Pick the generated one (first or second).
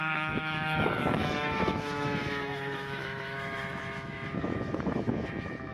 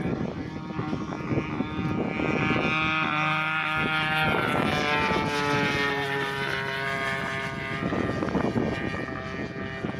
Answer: first